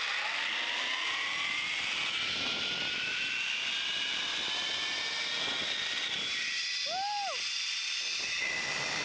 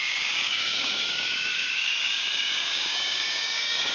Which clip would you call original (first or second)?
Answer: first